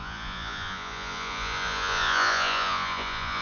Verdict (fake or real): fake